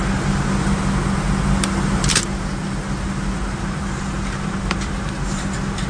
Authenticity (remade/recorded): recorded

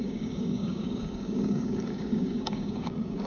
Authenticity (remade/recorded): remade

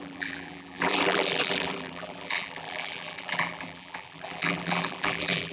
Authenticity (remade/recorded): remade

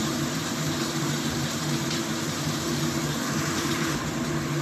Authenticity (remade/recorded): remade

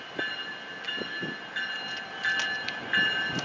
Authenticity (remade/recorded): recorded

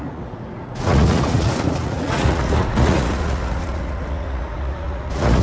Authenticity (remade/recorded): remade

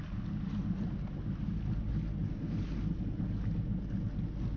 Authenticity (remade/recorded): recorded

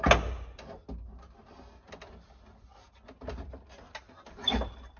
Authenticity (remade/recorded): recorded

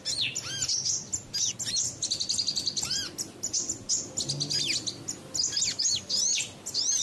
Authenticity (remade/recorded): recorded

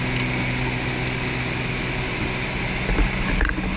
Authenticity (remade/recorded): recorded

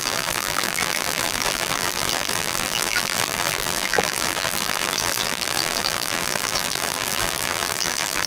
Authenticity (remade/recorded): remade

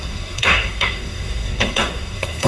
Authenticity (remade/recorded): remade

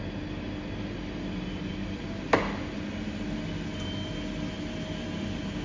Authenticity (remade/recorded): recorded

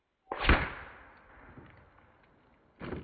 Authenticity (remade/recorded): recorded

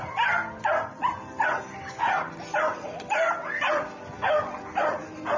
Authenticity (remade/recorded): recorded